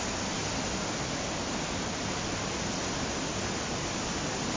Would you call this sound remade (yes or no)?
no